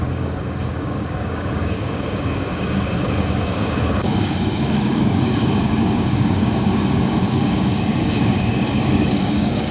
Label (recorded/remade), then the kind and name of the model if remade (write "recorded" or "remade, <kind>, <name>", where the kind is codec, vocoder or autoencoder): remade, codec, DAC